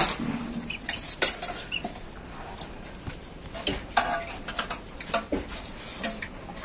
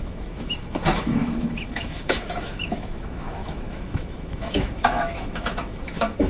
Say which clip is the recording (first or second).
first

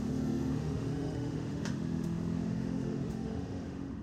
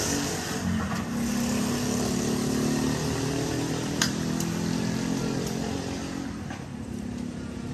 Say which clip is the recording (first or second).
second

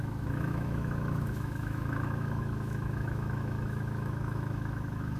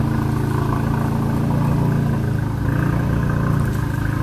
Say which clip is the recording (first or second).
second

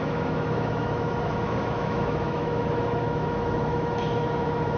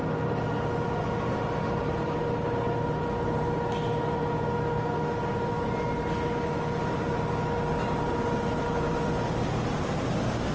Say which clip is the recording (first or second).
second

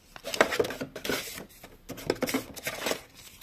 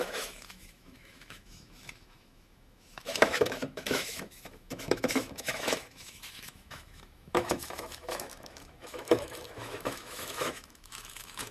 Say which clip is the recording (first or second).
first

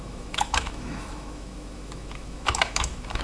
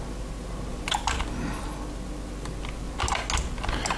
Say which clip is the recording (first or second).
second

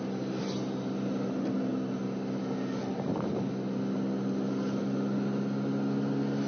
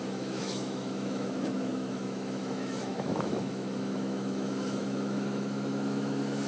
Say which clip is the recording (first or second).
first